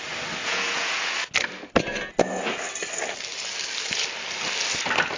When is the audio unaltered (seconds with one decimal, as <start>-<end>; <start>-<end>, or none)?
0.0-0.4; 0.9-5.2

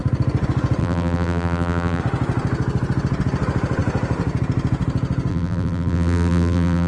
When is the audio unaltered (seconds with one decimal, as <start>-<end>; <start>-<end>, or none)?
0.0-0.8; 2.0-5.3

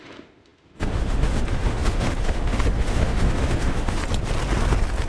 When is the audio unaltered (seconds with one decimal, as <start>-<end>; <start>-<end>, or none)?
4.0-5.1